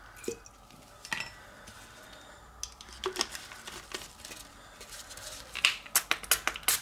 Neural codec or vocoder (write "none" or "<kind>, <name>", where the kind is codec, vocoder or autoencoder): none